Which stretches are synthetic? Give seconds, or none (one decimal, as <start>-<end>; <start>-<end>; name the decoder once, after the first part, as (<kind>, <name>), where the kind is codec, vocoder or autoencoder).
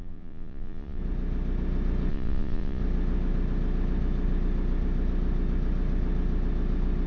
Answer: 0.0-1.0 (vocoder, Vocos); 2.1-2.8